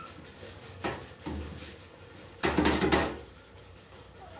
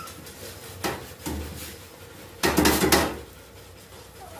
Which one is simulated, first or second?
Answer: first